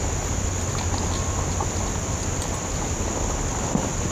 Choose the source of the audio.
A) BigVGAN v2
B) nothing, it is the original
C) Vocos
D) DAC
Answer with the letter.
B